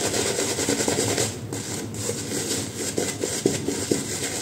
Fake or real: real